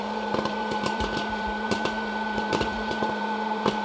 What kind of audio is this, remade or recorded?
remade